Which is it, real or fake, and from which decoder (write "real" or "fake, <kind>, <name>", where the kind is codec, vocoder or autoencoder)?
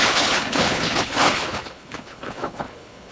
fake, codec, HILCodec